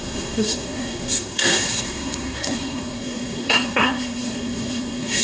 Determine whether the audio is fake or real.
fake